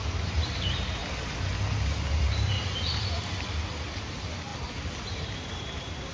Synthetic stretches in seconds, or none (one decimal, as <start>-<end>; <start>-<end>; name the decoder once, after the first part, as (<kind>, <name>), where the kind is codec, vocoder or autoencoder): 0.0-1.0 (vocoder, BigVGAN v2); 2.1-4.5; 5.1-6.1